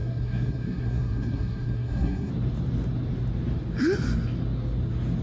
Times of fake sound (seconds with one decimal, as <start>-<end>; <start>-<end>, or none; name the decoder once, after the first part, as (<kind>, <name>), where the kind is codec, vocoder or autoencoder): 0.0-2.3 (codec, SNAC)

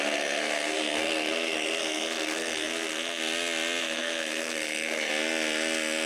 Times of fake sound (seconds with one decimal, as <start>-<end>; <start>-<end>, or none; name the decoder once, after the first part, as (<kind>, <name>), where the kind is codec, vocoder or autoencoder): 0.0-3.2 (codec, SNAC); 3.8-5.1

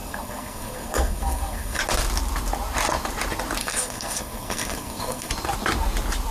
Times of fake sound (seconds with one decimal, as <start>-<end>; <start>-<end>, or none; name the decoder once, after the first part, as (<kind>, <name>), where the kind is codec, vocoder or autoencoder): 0.0-1.8 (codec, SNAC); 3.6-5.3